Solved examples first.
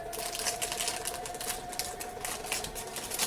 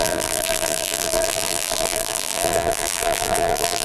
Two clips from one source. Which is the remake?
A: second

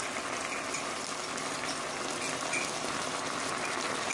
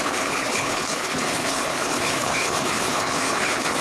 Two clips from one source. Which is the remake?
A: second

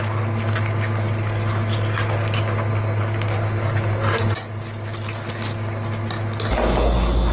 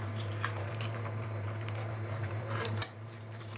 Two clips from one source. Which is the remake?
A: second